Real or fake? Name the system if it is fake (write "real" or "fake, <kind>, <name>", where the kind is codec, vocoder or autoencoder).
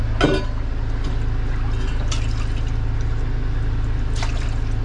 real